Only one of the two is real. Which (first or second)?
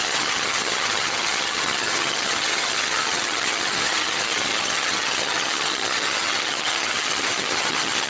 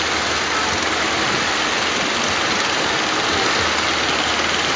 second